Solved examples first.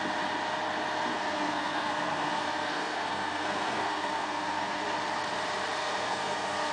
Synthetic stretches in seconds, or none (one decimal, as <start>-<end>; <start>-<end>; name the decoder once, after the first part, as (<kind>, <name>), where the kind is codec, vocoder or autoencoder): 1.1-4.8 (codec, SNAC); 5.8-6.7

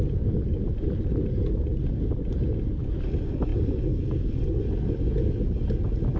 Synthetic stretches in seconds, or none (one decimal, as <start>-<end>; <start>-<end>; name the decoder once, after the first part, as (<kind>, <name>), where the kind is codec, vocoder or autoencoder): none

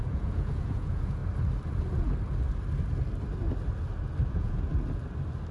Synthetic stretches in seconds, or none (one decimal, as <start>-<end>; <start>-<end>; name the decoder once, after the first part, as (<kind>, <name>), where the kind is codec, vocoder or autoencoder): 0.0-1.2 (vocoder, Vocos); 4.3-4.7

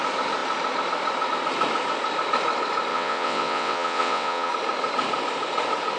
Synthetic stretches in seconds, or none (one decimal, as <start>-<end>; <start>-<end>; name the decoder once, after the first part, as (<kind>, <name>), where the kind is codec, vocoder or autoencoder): 2.9-4.5 (vocoder, WaveNeXt)

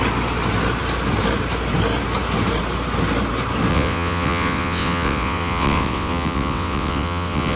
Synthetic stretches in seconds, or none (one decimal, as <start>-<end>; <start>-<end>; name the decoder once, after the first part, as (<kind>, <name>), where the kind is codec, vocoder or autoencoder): 3.7-7.6 (vocoder, WaveNeXt)

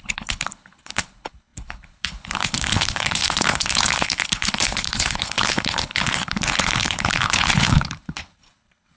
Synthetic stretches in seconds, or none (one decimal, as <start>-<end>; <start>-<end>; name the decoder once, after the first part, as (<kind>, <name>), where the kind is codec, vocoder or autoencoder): 0.0-9.0 (codec, HILCodec)